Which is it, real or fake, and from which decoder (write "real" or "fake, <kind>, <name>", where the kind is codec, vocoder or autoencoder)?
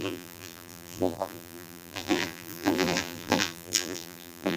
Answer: fake, vocoder, BigVGAN v2